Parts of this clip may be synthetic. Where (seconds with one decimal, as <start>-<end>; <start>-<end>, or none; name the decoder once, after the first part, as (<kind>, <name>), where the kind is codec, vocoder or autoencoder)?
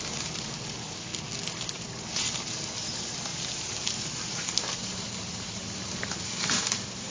0.0-1.1 (vocoder, BigVGAN v2); 1.7-7.1